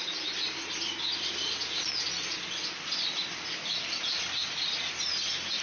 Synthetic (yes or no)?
no